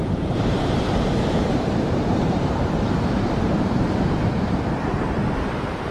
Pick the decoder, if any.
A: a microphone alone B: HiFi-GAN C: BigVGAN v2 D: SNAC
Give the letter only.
C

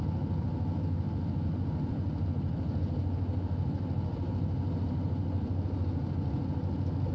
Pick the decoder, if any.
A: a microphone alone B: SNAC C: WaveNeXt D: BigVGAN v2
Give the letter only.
A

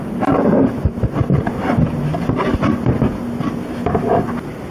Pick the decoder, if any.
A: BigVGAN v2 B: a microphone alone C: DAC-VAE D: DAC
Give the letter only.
B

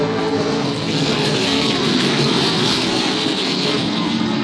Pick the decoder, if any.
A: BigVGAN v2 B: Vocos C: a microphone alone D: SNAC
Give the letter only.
D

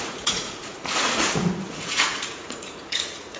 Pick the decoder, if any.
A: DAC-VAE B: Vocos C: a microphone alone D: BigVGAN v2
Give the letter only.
B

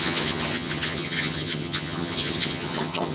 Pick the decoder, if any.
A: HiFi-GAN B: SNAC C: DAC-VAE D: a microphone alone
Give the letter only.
A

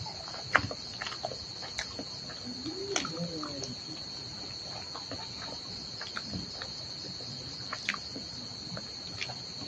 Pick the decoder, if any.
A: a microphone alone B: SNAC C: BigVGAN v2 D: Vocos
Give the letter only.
A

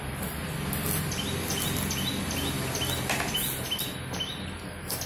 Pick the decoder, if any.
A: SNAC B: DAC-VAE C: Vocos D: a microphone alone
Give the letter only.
D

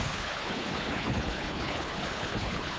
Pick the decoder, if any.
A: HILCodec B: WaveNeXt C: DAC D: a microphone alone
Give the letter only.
A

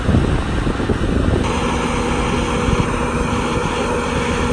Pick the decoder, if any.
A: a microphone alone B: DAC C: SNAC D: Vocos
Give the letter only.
A